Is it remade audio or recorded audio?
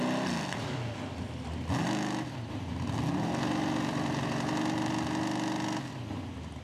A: recorded